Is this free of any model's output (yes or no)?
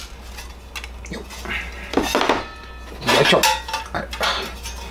yes